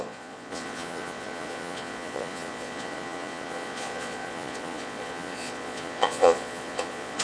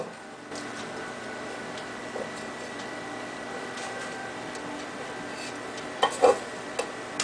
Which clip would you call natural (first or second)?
second